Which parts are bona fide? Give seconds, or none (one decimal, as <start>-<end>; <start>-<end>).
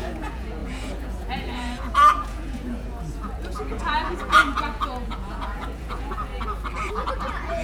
6.3-6.9